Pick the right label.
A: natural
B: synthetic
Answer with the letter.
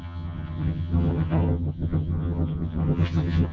B